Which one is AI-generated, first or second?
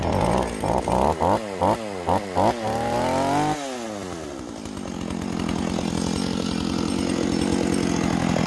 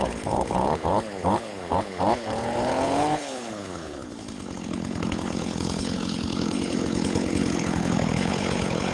second